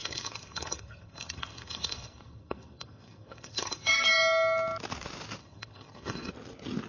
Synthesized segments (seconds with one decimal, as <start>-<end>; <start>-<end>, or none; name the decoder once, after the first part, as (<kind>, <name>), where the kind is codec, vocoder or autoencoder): 0.0-4.1 (codec, SNAC); 5.4-6.3